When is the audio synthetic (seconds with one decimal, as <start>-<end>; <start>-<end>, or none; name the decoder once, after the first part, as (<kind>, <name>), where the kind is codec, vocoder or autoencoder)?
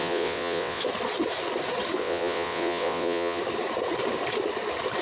0.0-0.8 (vocoder, WaveNeXt); 2.0-3.4